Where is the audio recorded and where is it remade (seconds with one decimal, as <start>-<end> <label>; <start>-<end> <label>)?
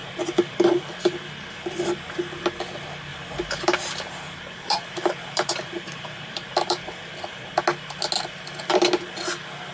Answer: 0.0-3.1 recorded; 3.1-7.1 remade; 7.1-9.7 recorded